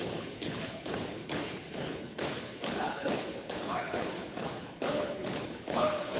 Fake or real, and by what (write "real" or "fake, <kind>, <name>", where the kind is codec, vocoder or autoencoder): fake, codec, HILCodec